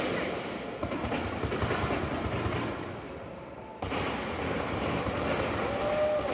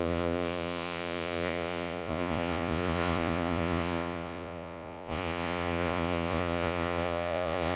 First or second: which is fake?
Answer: second